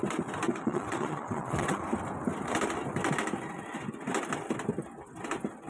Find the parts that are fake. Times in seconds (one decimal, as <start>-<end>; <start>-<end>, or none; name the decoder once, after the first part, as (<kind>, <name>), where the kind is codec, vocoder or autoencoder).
0.5-1.8 (vocoder, WaveNeXt)